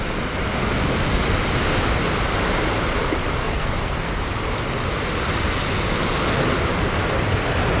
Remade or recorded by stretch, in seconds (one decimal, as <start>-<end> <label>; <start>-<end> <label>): 0.0-3.4 recorded; 3.4-4.1 remade; 4.1-7.8 recorded